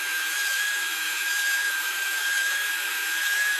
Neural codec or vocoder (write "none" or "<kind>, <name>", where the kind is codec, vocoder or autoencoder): autoencoder, DAC-VAE